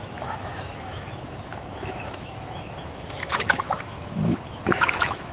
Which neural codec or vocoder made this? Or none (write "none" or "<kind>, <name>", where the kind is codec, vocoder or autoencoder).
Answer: autoencoder, DAC-VAE